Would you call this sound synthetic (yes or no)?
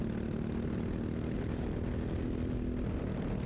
no